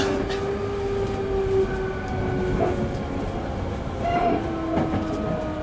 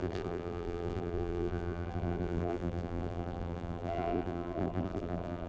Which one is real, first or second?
first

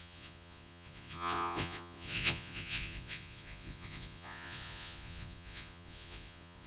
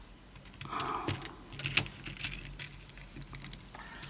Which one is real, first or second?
second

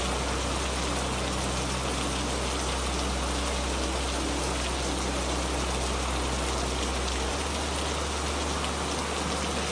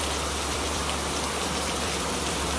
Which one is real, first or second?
first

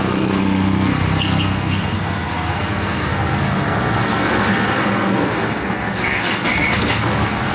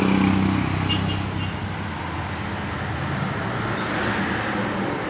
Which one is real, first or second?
second